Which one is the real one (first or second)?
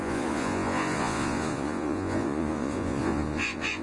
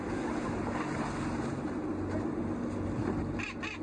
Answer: second